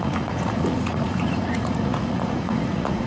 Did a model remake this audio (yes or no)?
yes